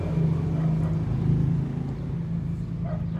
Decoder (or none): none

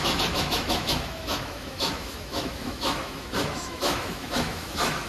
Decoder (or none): autoencoder, DAC-VAE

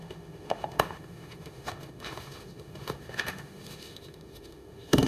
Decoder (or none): autoencoder, DAC-VAE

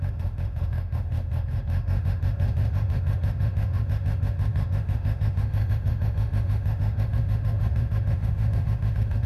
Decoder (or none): autoencoder, DAC-VAE